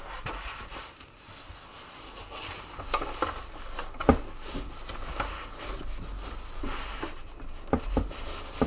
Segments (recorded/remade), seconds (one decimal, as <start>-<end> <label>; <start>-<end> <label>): 0.0-0.7 recorded; 0.7-1.3 remade; 1.3-8.7 recorded